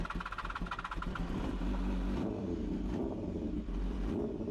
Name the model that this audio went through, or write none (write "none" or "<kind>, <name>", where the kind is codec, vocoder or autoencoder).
vocoder, BigVGAN v2